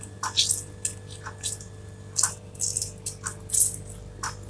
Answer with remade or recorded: recorded